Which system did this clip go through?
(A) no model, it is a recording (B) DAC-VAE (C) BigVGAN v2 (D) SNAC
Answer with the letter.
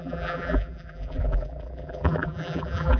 C